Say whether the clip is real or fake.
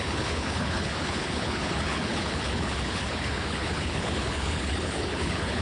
fake